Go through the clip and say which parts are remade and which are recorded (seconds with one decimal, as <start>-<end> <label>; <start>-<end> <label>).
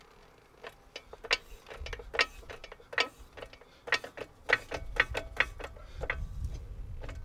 0.0-7.2 recorded